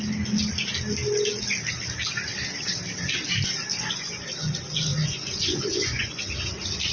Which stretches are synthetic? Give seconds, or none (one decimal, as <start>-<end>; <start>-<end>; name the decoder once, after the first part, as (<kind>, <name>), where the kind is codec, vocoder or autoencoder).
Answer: 3.7-4.3 (vocoder, Vocos); 4.9-6.2

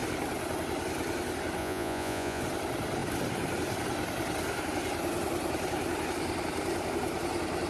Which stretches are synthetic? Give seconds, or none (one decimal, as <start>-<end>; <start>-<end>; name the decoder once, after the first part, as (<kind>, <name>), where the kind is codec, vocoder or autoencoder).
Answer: 1.6-2.4 (vocoder, Vocos)